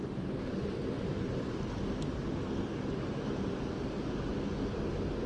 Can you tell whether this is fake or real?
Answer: real